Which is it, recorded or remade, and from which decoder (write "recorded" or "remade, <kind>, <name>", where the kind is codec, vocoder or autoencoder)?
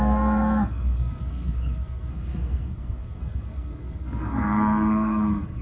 remade, codec, SNAC